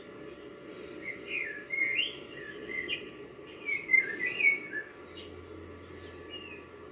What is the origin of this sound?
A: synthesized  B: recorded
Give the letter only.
B